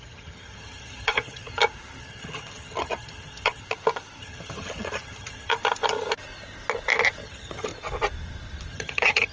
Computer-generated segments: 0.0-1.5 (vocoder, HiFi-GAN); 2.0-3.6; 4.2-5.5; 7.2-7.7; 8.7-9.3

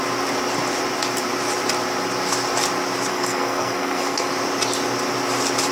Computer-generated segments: 3.1-4.3 (codec, SNAC)